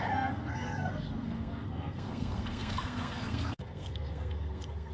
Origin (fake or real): fake